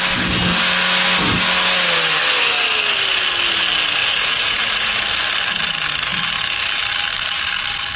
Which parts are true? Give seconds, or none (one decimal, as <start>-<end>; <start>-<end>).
0.0-4.0; 5.0-8.0